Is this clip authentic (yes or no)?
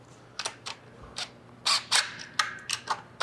yes